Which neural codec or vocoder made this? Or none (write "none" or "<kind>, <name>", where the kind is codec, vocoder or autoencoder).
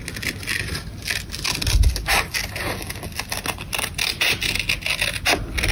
none